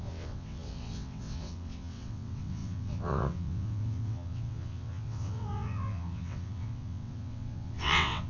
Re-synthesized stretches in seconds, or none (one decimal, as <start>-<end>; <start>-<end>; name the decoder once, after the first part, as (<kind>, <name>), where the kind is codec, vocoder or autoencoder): 0.0-8.3 (vocoder, WaveNeXt)